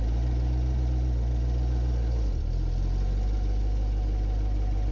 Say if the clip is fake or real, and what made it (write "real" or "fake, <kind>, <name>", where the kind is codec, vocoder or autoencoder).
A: real